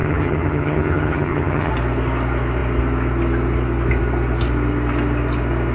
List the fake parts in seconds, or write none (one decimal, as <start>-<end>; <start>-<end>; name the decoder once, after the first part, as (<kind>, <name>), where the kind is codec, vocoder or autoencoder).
0.0-1.7 (vocoder, HiFi-GAN)